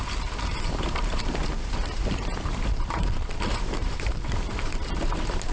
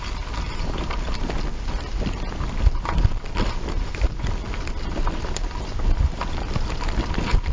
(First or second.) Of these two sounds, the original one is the second